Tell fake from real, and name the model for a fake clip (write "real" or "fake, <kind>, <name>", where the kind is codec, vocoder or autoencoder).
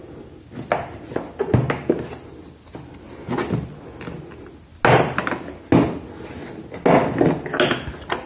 real